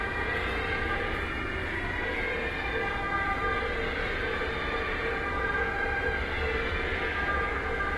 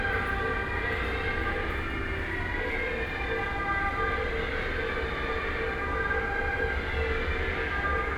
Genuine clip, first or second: second